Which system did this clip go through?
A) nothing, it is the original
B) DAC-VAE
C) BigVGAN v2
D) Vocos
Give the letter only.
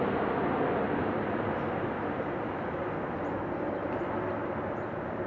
A